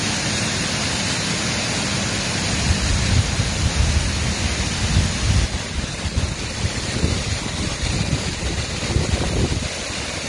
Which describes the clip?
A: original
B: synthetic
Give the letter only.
A